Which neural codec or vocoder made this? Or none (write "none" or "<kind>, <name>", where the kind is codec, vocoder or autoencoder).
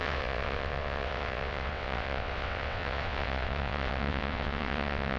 vocoder, WaveNeXt